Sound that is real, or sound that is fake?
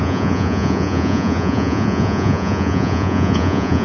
fake